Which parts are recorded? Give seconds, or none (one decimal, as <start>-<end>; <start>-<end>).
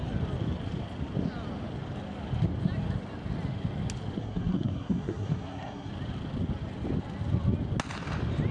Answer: 0.0-4.2; 5.9-8.5